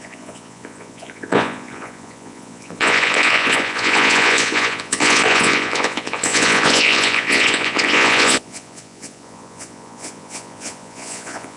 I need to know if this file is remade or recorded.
remade